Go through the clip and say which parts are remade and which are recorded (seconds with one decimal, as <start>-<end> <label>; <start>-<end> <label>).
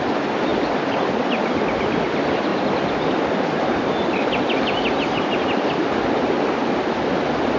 0.0-7.6 recorded